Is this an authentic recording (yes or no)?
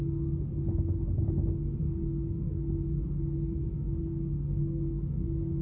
no